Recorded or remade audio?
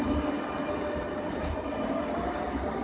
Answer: recorded